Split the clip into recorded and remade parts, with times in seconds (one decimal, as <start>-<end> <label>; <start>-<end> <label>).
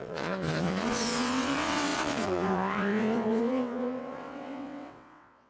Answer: 0.0-5.5 remade